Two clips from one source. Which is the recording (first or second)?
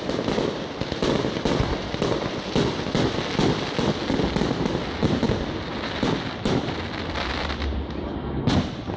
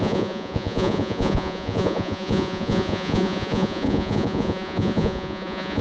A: first